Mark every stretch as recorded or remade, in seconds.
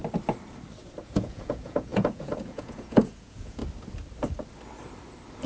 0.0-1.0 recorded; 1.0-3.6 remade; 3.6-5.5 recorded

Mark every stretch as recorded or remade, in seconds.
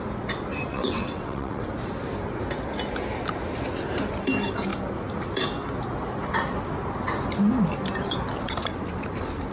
0.0-0.7 recorded; 0.7-1.6 remade; 1.6-9.5 recorded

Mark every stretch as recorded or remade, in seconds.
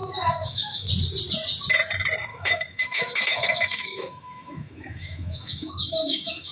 0.0-0.9 remade; 0.9-2.3 recorded; 2.3-6.5 remade